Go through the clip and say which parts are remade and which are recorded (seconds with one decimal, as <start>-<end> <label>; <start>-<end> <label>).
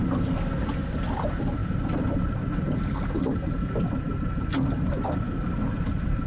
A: 0.0-1.6 recorded; 1.6-2.3 remade; 2.3-6.3 recorded